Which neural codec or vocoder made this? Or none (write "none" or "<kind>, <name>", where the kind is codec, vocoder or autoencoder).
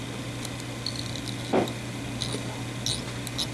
none